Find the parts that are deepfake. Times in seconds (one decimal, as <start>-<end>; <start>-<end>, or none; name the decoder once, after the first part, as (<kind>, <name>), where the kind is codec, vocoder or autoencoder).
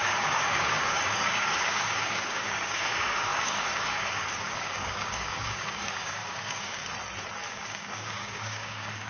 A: 0.0-6.8 (codec, DAC); 7.5-9.1